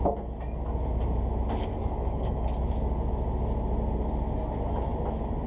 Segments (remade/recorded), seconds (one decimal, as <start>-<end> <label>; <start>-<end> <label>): 0.0-1.7 recorded; 1.7-2.6 remade; 2.6-5.5 recorded